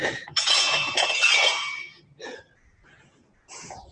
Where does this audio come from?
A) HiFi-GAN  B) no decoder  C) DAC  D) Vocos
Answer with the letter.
D